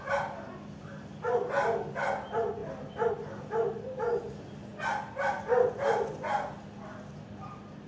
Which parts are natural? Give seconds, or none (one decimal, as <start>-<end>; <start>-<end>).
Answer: 0.0-7.9